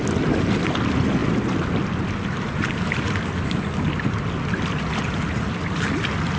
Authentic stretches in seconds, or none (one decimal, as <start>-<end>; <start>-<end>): 0.0-6.4